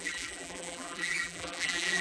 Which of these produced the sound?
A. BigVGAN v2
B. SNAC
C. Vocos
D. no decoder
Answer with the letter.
A